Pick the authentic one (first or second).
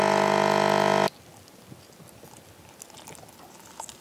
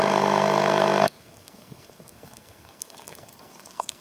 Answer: first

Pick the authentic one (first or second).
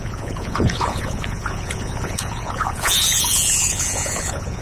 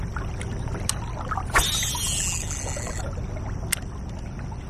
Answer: second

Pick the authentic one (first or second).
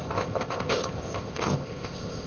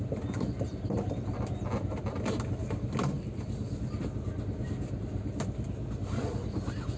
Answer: second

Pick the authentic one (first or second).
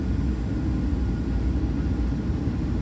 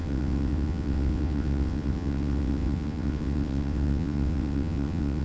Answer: first